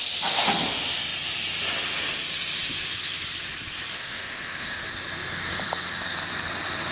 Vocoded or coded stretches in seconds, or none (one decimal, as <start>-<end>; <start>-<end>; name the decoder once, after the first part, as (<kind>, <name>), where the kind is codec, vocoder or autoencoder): 3.9-4.8 (autoencoder, DAC-VAE)